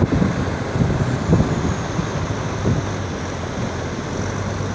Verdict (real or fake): real